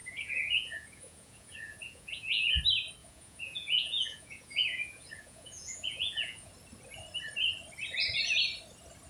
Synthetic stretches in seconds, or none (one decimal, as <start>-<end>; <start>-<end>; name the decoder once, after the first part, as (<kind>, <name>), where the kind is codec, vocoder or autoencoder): 0.0-2.6 (vocoder, Vocos); 3.0-6.5